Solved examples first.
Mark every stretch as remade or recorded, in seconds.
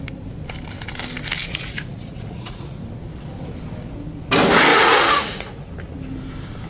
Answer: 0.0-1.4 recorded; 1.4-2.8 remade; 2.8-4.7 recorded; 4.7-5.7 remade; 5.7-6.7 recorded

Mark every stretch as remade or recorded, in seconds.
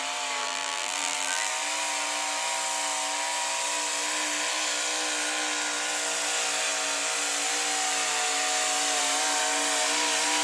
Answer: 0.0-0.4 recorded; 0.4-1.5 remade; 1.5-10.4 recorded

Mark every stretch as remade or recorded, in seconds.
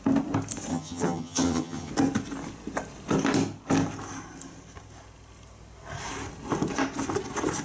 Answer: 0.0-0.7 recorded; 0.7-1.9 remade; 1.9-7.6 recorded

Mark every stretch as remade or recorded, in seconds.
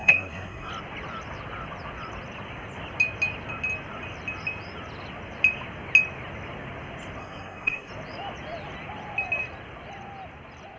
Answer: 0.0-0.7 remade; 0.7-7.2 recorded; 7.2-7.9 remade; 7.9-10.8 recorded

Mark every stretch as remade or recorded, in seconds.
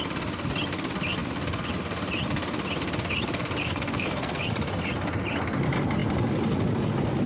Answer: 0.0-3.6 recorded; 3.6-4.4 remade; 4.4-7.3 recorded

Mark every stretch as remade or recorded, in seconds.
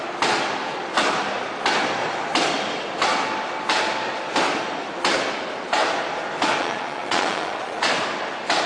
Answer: 0.0-6.6 recorded; 6.6-7.9 remade; 7.9-8.7 recorded